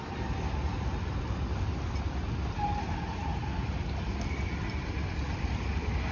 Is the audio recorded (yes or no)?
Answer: yes